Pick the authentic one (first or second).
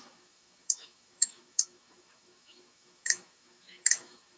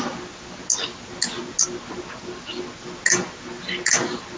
second